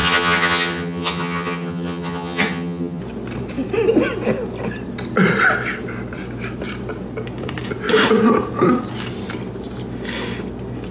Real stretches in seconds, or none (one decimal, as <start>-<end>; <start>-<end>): 3.0-10.9